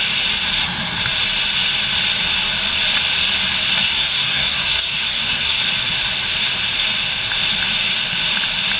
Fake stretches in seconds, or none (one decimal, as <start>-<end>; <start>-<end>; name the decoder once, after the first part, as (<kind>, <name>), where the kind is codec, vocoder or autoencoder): 3.7-5.6 (codec, SNAC)

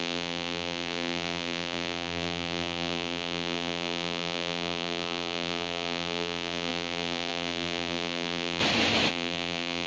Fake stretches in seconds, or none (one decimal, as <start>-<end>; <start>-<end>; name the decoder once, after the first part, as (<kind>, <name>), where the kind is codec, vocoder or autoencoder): 0.0-8.6 (vocoder, BigVGAN v2); 9.1-9.9

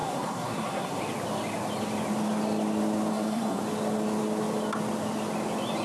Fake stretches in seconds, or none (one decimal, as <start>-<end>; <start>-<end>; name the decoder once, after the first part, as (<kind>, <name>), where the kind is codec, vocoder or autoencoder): 0.0-1.0 (codec, SNAC); 3.1-3.6

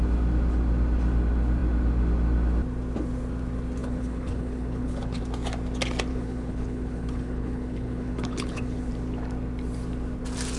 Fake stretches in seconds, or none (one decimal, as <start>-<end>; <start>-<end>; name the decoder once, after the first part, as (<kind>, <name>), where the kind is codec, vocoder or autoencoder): 3.8-5.2 (codec, HILCodec); 6.1-8.9

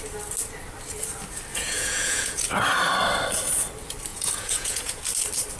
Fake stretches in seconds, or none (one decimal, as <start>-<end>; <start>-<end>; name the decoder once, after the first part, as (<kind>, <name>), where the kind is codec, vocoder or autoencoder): 1.5-2.4 (vocoder, Vocos); 4.1-5.0